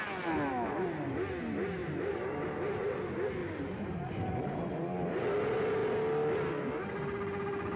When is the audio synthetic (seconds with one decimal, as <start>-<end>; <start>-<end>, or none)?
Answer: 1.8-3.0; 3.4-5.2